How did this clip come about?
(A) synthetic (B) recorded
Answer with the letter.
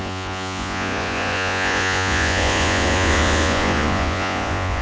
A